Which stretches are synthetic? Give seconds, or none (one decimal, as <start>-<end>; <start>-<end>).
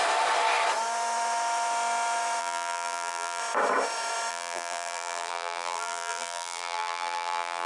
2.4-3.4; 4.3-7.7